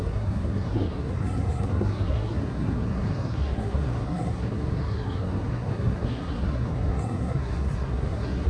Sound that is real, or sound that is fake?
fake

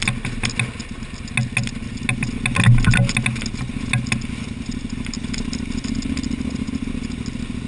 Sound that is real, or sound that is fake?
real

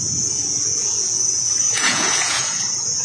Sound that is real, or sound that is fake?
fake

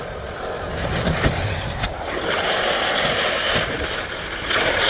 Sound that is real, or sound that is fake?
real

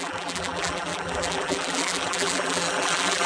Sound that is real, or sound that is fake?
fake